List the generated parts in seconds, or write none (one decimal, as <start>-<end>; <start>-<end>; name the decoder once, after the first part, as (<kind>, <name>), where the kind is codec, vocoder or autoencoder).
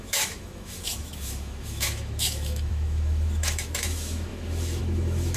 0.0-5.4 (autoencoder, DAC-VAE)